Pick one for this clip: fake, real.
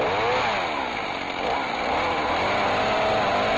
real